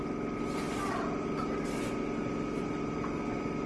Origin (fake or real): real